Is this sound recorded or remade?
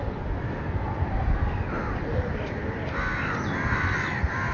recorded